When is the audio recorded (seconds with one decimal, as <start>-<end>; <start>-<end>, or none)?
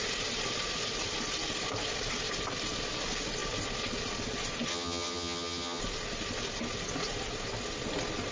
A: 0.0-4.7; 5.8-8.3